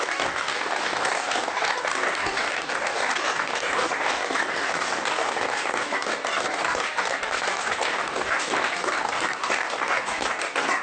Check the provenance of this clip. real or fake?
fake